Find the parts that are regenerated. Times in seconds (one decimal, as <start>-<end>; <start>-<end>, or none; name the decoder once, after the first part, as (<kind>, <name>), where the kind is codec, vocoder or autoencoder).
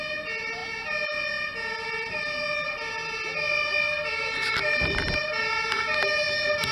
none